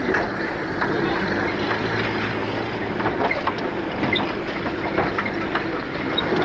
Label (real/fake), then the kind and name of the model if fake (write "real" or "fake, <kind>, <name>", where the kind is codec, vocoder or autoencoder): real